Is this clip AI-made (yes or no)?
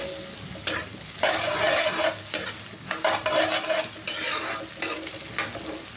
no